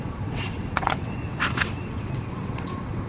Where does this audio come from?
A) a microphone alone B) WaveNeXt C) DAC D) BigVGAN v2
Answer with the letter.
B